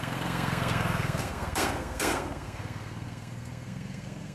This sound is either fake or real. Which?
fake